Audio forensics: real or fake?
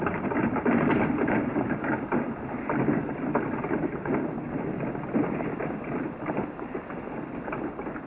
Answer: real